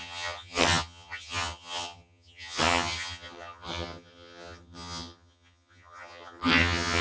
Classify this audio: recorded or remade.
remade